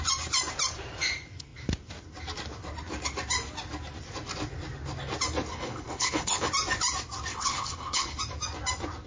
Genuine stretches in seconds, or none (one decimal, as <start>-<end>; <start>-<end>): 0.0-5.5; 6.5-7.3; 8.2-9.1

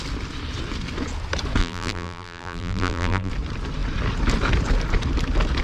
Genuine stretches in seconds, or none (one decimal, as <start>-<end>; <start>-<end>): 0.0-1.6; 3.3-5.6

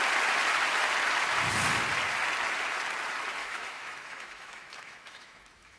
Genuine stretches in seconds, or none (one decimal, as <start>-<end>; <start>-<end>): 0.0-3.4

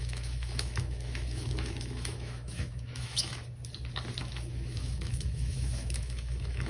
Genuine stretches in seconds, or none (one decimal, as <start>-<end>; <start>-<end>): 3.4-4.2

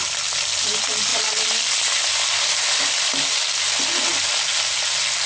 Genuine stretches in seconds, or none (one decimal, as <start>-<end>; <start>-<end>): 0.0-5.3

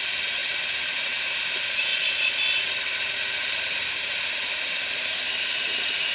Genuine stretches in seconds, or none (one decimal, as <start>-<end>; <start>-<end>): 1.9-3.4